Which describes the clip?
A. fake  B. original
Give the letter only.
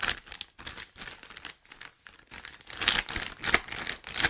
B